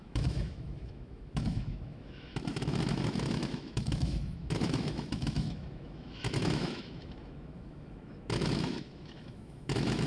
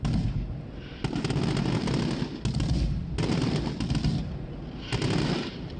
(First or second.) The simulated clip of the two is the first